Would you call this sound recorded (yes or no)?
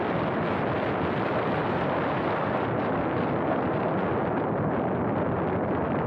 yes